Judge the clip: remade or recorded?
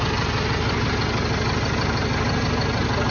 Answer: recorded